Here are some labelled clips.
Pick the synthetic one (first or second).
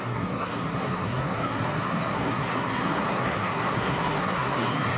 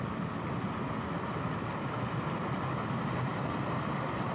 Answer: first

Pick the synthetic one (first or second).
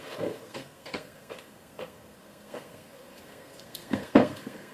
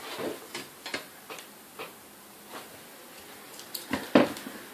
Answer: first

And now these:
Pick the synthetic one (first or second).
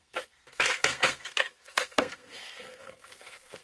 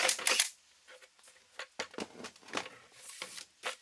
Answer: first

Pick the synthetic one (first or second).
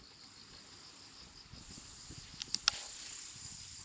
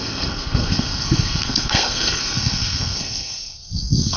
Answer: second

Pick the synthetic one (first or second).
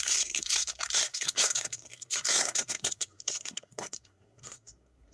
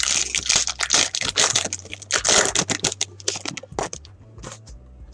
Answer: first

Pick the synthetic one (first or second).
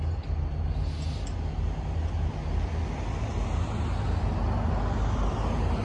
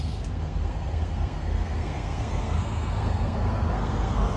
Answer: second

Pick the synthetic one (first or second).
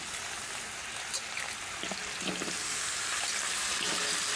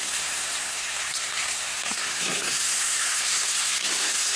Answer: second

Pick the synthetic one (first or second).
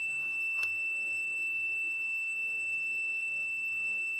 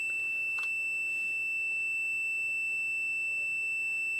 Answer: first